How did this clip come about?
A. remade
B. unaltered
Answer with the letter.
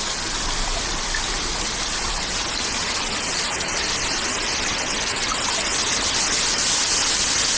B